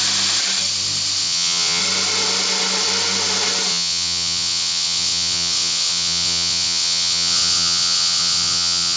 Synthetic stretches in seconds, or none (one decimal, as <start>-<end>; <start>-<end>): 1.2-1.8; 3.7-9.0